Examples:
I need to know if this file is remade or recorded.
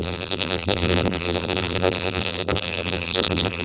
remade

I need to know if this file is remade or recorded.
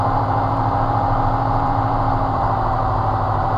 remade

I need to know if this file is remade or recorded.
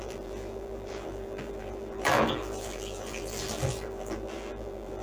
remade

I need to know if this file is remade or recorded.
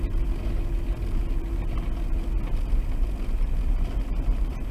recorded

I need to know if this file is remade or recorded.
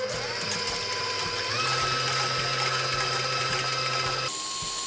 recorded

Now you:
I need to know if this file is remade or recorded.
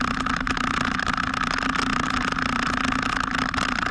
recorded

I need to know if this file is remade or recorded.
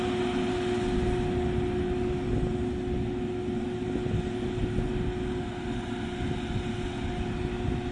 recorded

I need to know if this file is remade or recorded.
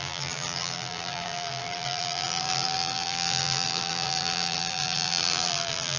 remade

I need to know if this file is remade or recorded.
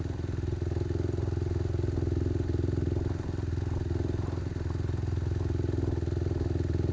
recorded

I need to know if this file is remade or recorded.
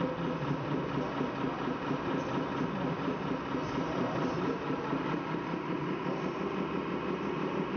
remade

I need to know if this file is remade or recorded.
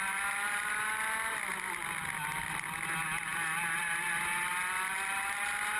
recorded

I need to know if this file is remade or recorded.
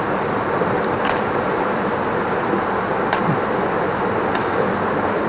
recorded